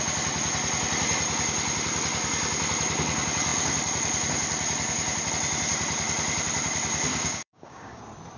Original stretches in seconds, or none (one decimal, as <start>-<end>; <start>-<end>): 0.0-7.1; 8.0-8.4